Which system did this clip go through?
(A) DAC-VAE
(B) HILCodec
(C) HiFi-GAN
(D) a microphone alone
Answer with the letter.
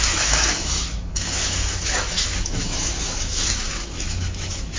A